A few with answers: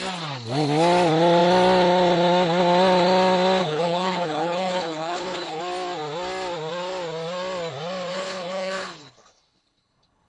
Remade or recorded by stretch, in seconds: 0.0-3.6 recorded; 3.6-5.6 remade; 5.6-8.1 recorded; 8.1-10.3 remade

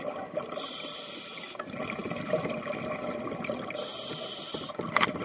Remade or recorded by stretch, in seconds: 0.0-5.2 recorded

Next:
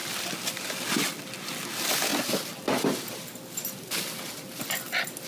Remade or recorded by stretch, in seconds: 0.0-0.9 remade; 0.9-5.3 recorded

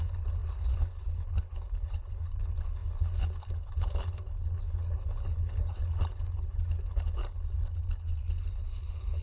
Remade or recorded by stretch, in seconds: 0.0-7.2 remade; 7.2-7.9 recorded; 7.9-9.2 remade

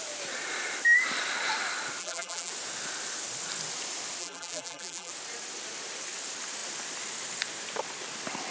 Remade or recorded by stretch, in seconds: 0.0-2.0 recorded; 2.0-2.5 remade; 2.5-4.2 recorded; 4.2-5.1 remade; 5.1-8.5 recorded

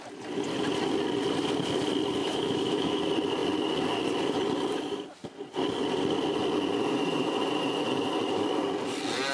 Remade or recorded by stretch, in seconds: 0.0-2.2 recorded; 2.2-3.0 remade; 3.0-9.3 recorded